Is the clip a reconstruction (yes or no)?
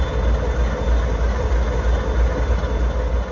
no